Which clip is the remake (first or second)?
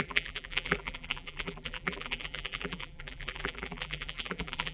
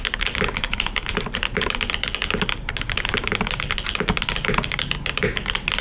first